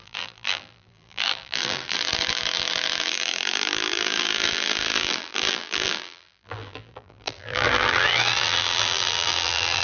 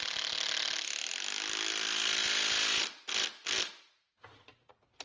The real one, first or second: second